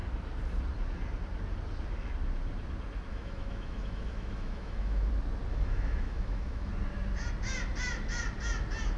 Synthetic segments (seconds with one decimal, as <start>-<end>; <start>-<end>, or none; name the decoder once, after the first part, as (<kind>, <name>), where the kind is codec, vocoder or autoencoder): 3.1-5.1 (autoencoder, DAC-VAE); 5.5-6.7